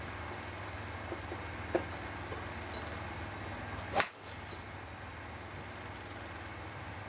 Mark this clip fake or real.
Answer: real